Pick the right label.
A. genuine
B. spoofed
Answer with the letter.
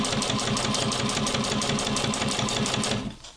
A